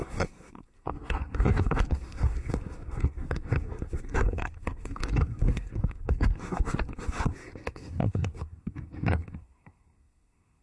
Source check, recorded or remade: remade